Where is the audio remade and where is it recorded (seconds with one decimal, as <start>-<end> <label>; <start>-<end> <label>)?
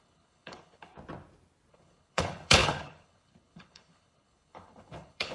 0.0-0.9 remade; 0.9-1.7 recorded; 1.7-5.3 remade